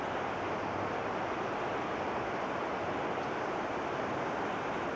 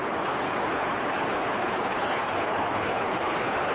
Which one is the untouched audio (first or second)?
first